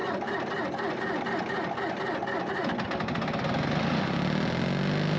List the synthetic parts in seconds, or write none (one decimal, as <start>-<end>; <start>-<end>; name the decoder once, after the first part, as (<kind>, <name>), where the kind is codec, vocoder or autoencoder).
0.0-1.2 (vocoder, BigVGAN v2)